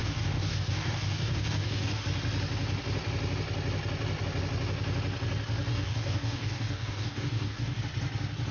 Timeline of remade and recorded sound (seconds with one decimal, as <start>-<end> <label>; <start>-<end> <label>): 0.0-2.0 remade; 2.0-5.7 recorded; 5.7-7.8 remade; 7.8-8.5 recorded